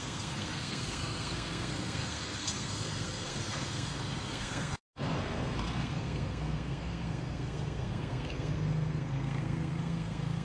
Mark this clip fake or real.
fake